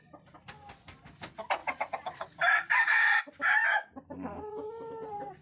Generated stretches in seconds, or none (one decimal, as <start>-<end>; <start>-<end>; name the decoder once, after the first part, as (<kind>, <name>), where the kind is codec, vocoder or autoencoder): 1.6-3.2 (vocoder, BigVGAN v2); 3.6-5.4